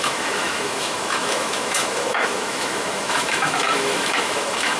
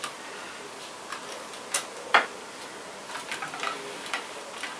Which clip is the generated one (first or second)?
first